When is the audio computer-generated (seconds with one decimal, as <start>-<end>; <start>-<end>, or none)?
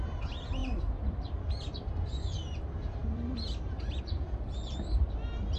0.0-5.6